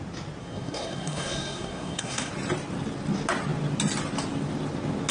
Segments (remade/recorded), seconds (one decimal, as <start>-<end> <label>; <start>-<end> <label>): 0.0-0.4 recorded; 0.4-2.3 remade; 2.3-5.1 recorded